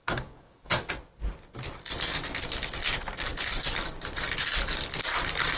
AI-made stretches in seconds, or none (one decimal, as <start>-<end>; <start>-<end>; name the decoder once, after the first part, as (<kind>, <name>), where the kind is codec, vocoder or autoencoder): 0.0-0.9 (codec, DAC)